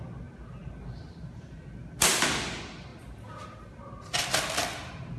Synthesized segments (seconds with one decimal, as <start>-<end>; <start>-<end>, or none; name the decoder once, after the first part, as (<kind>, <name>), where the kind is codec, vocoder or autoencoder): none

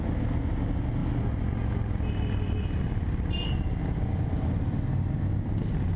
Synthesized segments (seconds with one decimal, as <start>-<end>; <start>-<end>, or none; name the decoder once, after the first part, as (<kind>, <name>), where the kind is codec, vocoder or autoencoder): none

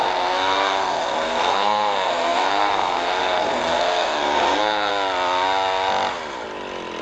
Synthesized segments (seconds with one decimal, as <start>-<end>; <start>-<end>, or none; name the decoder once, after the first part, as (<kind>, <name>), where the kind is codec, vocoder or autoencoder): 0.0-4.9 (codec, SNAC)

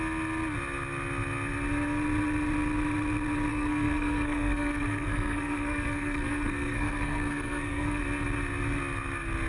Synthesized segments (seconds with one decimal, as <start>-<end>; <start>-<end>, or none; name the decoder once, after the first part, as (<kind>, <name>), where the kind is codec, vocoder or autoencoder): 3.5-8.0 (codec, SNAC)

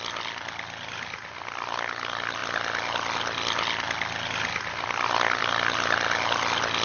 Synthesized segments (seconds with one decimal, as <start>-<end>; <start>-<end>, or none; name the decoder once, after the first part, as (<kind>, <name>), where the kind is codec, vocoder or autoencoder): none

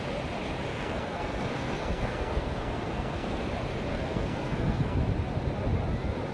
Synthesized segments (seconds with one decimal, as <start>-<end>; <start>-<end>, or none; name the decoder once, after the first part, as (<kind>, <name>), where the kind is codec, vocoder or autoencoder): 0.7-3.5 (codec, SNAC); 3.9-5.0

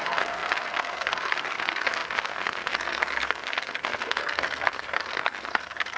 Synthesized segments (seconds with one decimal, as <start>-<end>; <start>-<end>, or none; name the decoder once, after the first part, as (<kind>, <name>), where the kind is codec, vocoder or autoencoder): 0.0-6.0 (codec, SNAC)